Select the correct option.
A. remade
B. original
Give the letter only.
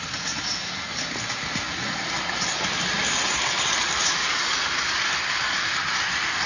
B